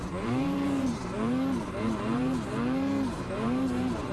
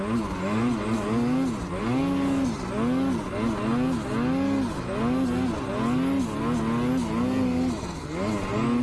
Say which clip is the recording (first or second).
second